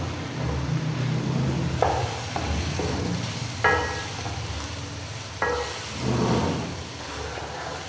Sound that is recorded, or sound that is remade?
recorded